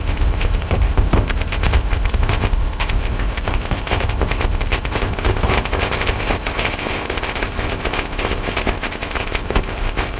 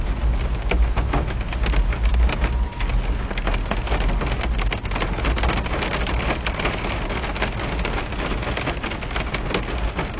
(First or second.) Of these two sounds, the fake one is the first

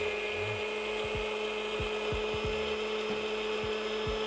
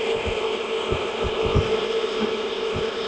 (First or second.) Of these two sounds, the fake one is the second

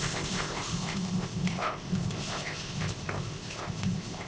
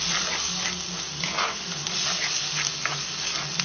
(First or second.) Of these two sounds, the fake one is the first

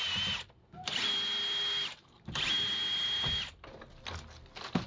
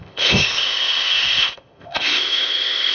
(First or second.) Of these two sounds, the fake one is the second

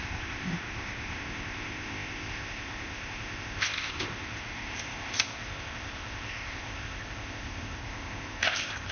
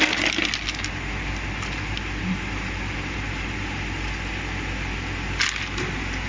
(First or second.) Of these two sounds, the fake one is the first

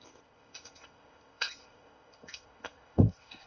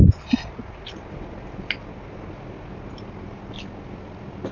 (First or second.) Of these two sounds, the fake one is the first